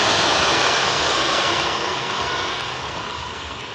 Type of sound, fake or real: fake